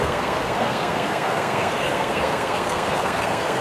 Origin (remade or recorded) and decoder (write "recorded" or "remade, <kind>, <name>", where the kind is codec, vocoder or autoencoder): remade, codec, SNAC